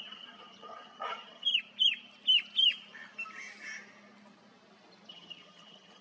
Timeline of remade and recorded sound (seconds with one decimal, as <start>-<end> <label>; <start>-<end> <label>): 0.0-1.5 remade; 1.5-5.1 recorded; 5.1-6.0 remade